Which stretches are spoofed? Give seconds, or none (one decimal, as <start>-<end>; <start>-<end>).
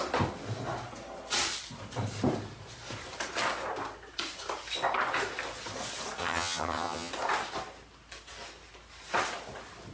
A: 6.2-7.1